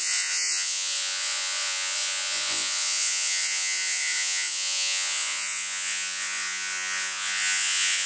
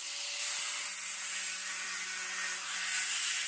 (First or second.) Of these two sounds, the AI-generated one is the first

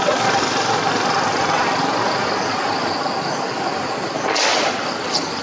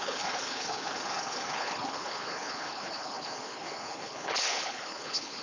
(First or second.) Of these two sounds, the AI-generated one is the second